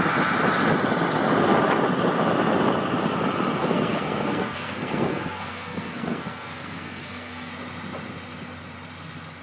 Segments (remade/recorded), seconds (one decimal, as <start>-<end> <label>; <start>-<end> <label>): 0.0-3.6 recorded; 3.6-7.5 remade; 7.5-9.4 recorded